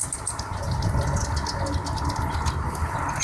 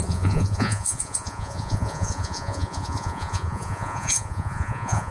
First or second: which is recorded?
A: first